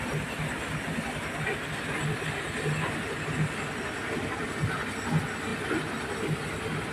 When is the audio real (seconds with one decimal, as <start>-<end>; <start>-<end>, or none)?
0.0-6.9